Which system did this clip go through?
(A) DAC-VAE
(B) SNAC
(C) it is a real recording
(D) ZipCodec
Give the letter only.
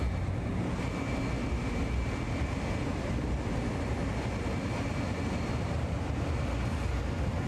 C